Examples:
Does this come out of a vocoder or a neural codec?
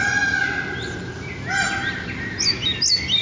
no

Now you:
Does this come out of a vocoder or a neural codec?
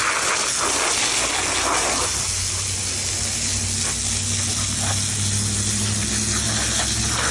no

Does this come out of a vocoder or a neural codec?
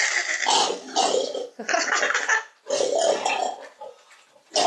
no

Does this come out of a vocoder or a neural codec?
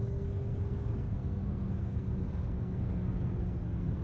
yes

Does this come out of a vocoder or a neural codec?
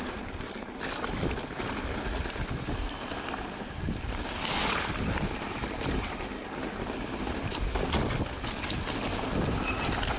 no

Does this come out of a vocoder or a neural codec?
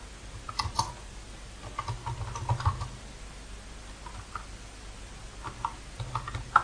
no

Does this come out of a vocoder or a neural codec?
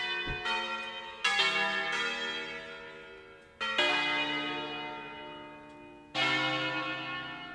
no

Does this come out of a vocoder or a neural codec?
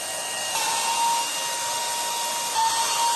no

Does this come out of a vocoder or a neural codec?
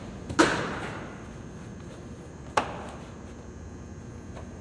no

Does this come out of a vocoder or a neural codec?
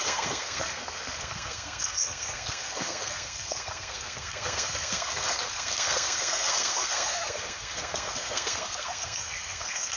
yes